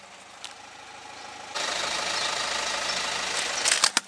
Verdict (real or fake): real